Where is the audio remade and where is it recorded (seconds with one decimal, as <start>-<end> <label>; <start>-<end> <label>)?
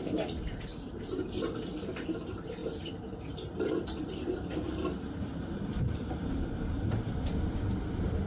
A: 0.0-0.7 remade; 0.7-1.4 recorded; 1.4-2.6 remade; 2.6-4.0 recorded; 4.0-8.3 remade